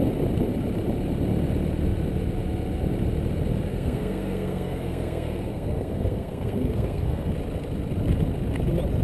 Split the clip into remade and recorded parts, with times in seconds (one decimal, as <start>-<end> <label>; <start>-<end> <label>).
0.0-3.7 recorded; 3.7-7.3 remade; 7.3-9.0 recorded